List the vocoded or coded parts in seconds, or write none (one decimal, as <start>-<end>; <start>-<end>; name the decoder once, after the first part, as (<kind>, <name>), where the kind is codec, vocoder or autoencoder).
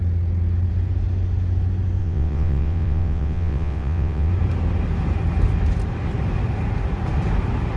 2.0-4.3 (vocoder, WaveNeXt)